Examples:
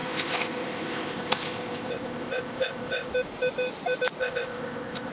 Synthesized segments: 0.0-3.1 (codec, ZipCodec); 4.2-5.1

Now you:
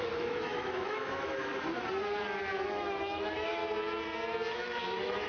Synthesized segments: 0.0-1.5 (autoencoder, DAC-VAE); 2.7-3.6; 4.5-5.3

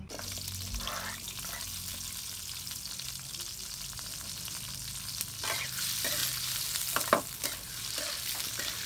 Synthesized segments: none

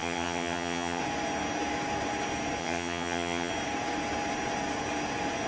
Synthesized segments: 0.0-1.0 (vocoder, HiFi-GAN); 2.6-3.5

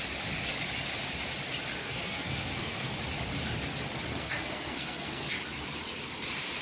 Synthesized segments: 1.8-3.0 (codec, SNAC); 4.1-5.3

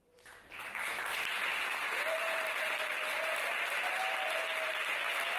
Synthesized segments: 1.5-4.7 (vocoder, BigVGAN v2)

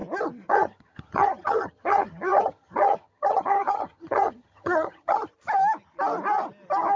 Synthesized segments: 0.5-5.3 (vocoder, HiFi-GAN)